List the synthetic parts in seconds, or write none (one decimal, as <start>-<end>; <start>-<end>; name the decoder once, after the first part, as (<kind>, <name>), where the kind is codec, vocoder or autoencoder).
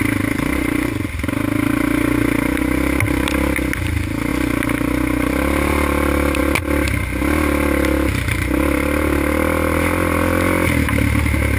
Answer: none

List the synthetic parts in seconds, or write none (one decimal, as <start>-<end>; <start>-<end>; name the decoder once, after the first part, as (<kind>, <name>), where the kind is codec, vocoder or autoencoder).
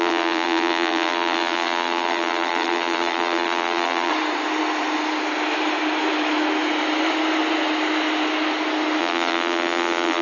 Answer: 0.0-4.1 (vocoder, BigVGAN v2); 9.0-10.2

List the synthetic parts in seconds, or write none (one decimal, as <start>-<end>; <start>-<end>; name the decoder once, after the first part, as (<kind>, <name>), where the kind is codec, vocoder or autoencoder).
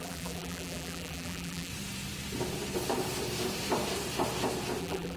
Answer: 0.0-1.7 (vocoder, BigVGAN v2); 4.8-5.2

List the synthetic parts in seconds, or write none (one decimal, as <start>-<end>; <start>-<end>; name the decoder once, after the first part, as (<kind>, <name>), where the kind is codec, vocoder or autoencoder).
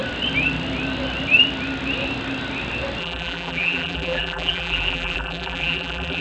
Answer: 3.0-6.2 (vocoder, BigVGAN v2)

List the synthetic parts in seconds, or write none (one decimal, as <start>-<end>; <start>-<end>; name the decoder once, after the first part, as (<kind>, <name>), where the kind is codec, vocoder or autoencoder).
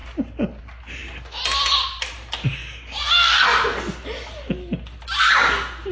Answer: none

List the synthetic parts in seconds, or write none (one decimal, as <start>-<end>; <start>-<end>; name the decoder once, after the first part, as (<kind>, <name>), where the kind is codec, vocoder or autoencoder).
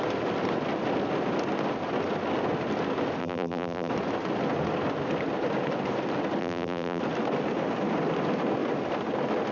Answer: 3.2-3.9 (vocoder, BigVGAN v2); 6.4-7.0